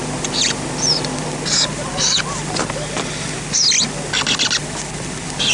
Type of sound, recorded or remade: recorded